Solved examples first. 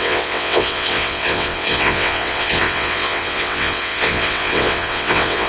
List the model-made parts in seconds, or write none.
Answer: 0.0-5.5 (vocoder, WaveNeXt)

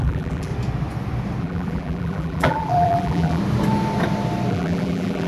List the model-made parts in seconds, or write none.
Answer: 0.0-0.5 (vocoder, BigVGAN v2); 1.4-3.4; 4.5-5.3

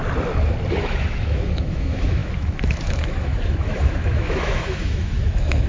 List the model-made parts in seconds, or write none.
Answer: 0.7-5.7 (autoencoder, DAC-VAE)

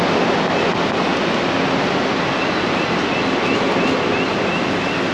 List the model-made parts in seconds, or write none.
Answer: none

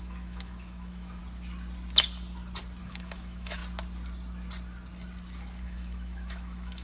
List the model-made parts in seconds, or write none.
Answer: 0.0-1.2 (autoencoder, DAC-VAE); 2.8-3.6; 5.6-6.8

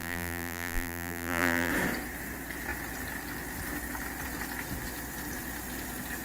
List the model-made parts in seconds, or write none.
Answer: 0.0-1.7 (vocoder, BigVGAN v2)

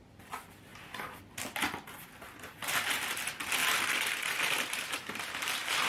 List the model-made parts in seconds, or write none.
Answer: 2.6-3.2 (vocoder, BigVGAN v2); 3.6-5.9

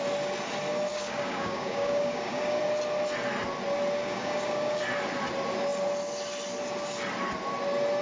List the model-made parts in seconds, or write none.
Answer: 0.9-2.6 (codec, DAC); 4.0-4.8